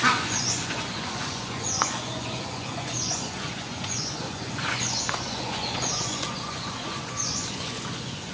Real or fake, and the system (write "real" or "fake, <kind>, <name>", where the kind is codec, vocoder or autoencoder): fake, vocoder, Vocos